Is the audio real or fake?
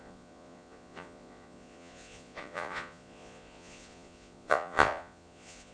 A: fake